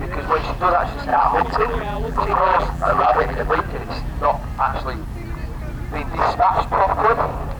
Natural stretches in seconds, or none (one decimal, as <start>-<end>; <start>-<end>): 0.0-1.1; 3.6-7.6